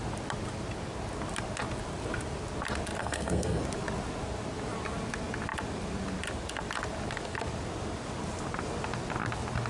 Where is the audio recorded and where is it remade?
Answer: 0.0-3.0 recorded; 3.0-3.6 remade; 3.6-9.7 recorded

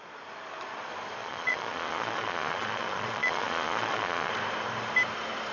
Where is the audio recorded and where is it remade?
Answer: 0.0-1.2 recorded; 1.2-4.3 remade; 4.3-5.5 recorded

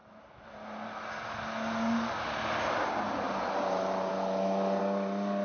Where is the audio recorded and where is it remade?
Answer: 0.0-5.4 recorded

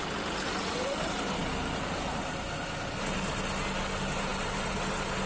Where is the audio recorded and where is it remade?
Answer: 0.0-5.3 recorded

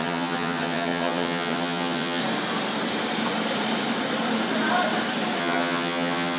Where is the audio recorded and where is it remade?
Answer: 0.0-2.2 remade; 2.2-5.4 recorded; 5.4-6.4 remade

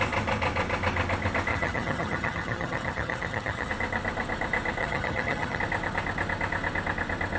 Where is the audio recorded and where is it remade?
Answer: 0.0-1.5 recorded; 1.5-3.7 remade; 3.7-4.8 recorded; 4.8-5.6 remade; 5.6-7.4 recorded

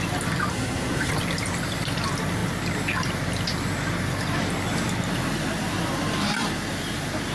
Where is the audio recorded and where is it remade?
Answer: 0.0-0.5 recorded; 0.5-1.1 remade; 1.1-7.3 recorded